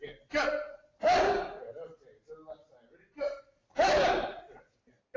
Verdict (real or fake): real